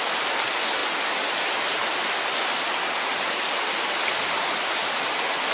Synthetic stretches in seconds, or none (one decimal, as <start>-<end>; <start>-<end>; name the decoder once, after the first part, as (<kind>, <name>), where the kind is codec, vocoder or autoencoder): none